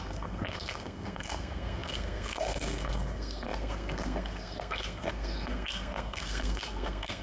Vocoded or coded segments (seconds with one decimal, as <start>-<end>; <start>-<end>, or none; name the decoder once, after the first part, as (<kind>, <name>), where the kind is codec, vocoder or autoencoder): 0.0-7.2 (codec, SNAC)